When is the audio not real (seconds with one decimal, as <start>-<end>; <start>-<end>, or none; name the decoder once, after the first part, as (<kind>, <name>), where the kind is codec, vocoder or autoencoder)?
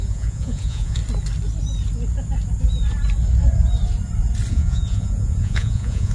0.0-1.0 (vocoder, Vocos); 4.5-6.1